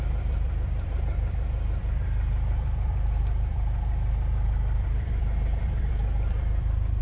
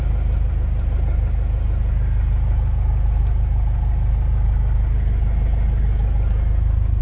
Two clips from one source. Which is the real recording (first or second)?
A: second